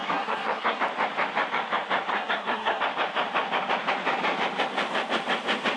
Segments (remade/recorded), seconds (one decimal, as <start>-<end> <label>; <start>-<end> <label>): 0.0-0.8 remade; 0.8-2.1 recorded; 2.1-2.8 remade; 2.8-5.8 recorded